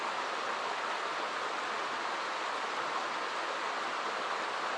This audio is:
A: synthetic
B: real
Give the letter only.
B